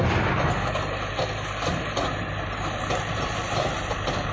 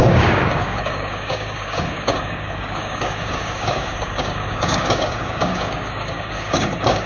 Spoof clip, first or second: second